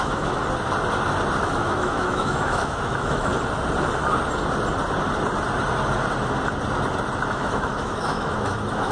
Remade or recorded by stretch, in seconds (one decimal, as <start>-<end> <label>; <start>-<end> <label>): 0.0-0.4 remade; 0.4-1.4 recorded; 1.4-3.3 remade; 3.3-7.3 recorded; 7.3-8.9 remade